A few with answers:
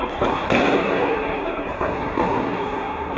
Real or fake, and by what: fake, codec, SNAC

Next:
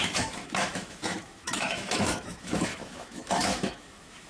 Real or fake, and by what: fake, autoencoder, DAC-VAE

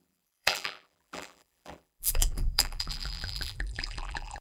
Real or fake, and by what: fake, vocoder, BigVGAN v2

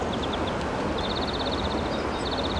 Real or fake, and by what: real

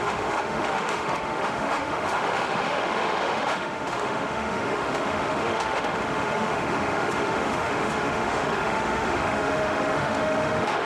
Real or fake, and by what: fake, autoencoder, DAC-VAE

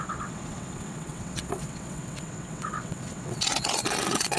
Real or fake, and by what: fake, vocoder, WaveNeXt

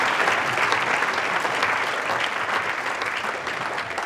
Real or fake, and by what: real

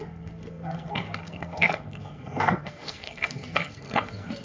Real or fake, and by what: fake, codec, SNAC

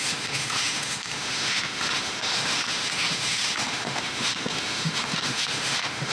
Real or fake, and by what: fake, autoencoder, DAC-VAE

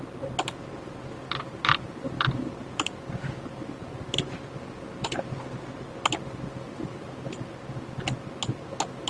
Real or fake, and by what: real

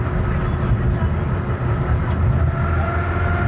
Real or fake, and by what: real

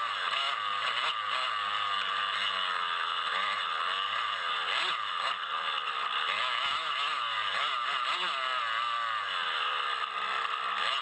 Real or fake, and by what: real